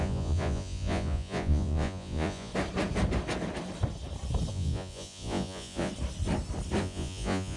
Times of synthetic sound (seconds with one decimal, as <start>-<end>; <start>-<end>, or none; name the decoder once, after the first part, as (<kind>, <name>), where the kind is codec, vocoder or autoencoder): 0.0-2.5 (vocoder, Vocos); 4.5-5.9; 6.8-7.6